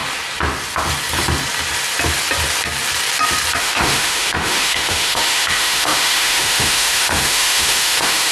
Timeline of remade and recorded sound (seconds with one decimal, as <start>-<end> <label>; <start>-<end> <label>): 0.0-3.6 recorded; 3.6-8.3 remade